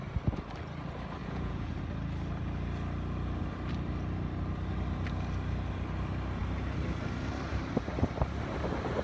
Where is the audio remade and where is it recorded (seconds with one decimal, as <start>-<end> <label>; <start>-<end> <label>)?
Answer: 0.0-1.2 recorded; 1.2-1.8 remade; 1.8-9.0 recorded